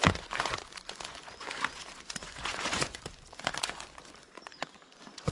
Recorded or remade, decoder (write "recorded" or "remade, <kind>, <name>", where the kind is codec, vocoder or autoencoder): remade, vocoder, Vocos